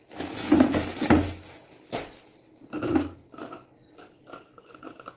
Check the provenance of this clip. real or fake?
real